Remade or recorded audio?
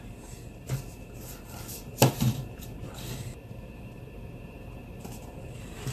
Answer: remade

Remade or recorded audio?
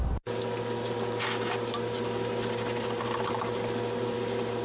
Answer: recorded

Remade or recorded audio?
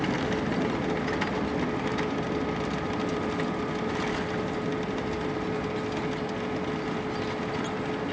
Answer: recorded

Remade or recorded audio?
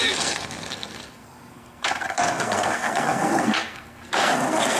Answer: remade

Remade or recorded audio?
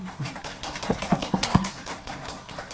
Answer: remade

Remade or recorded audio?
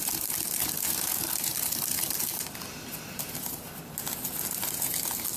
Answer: recorded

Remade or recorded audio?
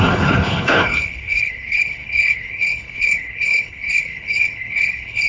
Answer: remade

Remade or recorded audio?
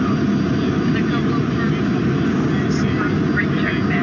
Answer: recorded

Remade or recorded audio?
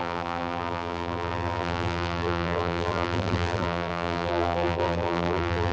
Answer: remade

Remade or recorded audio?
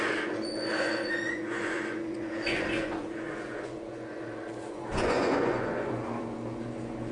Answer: remade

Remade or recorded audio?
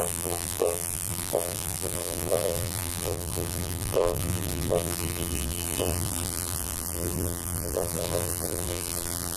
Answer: remade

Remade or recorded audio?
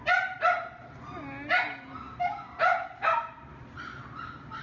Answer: recorded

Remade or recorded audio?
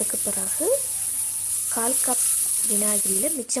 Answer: recorded